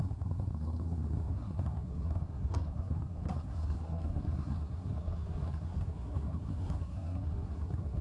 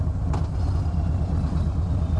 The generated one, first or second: first